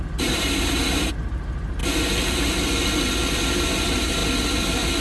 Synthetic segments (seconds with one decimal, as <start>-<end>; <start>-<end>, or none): 0.0-1.8; 3.4-4.2